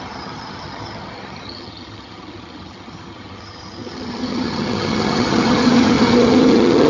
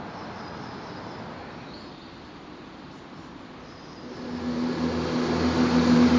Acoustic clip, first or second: second